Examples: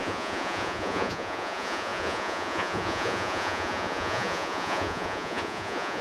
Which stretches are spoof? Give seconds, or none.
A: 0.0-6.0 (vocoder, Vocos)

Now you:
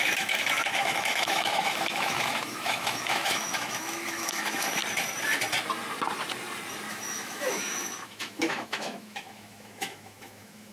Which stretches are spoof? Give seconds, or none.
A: 0.0-4.8 (autoencoder, DAC-VAE); 6.9-10.7

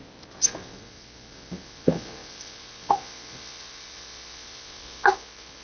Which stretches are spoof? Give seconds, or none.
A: none